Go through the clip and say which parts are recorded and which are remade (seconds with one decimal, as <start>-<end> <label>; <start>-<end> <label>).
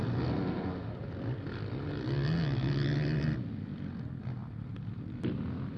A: 0.0-4.4 recorded; 4.4-5.2 remade; 5.2-5.8 recorded